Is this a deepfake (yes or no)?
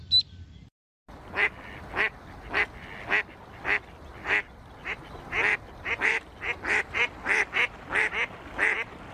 no